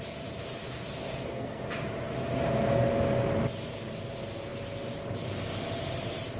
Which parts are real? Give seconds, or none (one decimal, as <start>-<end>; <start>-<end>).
0.0-0.6; 1.6-6.4